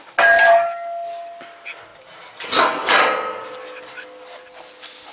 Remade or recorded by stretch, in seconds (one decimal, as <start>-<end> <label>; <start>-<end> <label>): 0.0-5.1 recorded